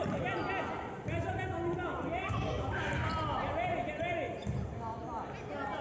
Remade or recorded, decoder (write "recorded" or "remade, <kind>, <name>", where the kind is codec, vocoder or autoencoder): recorded